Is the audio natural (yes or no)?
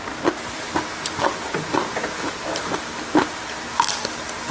yes